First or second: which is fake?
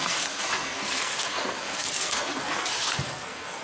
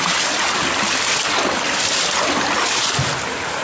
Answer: first